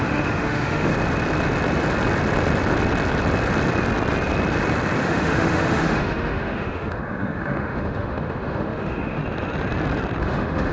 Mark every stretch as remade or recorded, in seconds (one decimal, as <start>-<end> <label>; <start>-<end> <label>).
0.0-0.9 remade; 0.9-5.0 recorded; 5.0-9.2 remade; 9.2-10.2 recorded; 10.2-10.7 remade

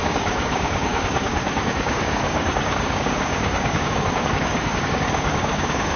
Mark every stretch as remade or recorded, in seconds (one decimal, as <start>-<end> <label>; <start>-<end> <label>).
0.0-6.0 remade

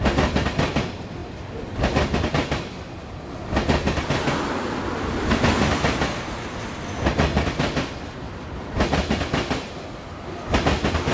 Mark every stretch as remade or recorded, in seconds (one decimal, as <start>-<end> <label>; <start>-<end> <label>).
0.0-11.1 recorded